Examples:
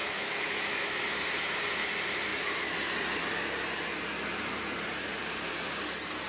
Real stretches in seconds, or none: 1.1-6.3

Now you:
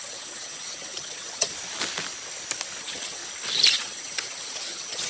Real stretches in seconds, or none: 1.5-2.8; 3.2-3.7

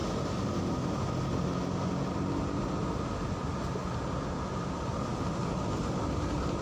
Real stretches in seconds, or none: 0.0-6.6

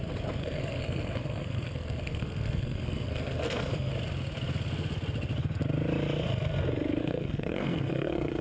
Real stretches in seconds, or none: 0.0-0.4; 3.9-7.0

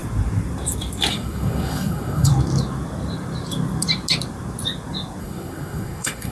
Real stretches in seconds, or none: 0.0-1.1; 2.3-5.2

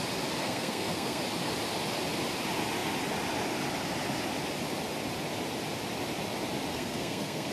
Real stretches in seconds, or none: 0.0-0.4; 1.2-6.7